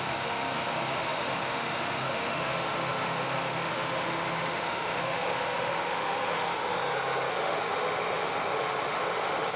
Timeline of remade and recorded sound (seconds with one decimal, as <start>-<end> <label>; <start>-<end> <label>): 0.0-6.8 remade; 6.8-7.3 recorded; 7.3-9.6 remade